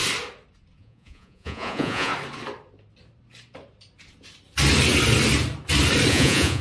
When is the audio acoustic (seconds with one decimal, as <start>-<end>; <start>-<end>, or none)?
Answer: 0.0-0.8; 2.1-6.1